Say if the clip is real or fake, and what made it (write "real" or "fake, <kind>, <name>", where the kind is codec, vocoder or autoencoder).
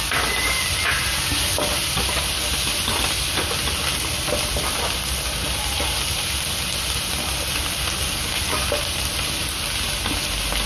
real